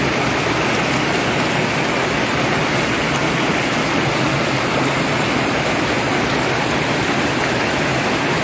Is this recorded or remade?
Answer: recorded